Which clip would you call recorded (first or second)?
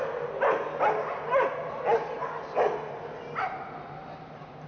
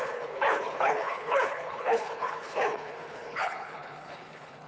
first